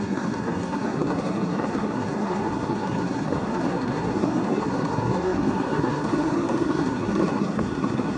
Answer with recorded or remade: remade